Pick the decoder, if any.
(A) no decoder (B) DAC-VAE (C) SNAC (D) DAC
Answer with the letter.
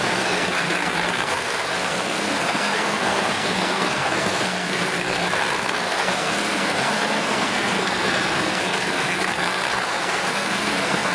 C